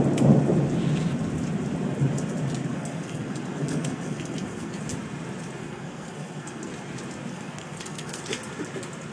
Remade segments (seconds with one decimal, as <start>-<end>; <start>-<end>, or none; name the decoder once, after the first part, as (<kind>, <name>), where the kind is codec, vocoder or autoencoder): 2.7-4.8 (codec, SNAC); 5.6-6.7; 7.3-8.2